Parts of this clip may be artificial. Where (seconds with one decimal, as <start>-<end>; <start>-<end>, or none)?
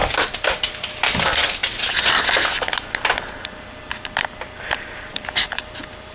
0.9-1.6; 5.1-6.1